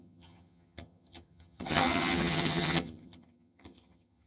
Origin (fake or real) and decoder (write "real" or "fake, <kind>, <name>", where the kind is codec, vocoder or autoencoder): fake, vocoder, HiFi-GAN